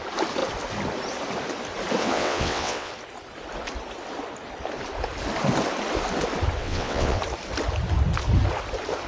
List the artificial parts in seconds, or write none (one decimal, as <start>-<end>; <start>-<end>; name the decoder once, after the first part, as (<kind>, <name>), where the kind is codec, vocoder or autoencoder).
2.0-2.9 (vocoder, WaveNeXt); 6.6-7.2